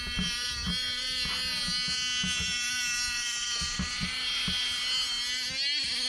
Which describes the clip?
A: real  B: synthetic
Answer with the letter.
A